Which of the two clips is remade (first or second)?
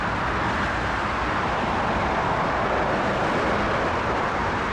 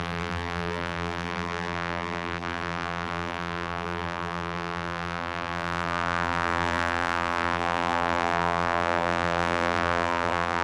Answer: second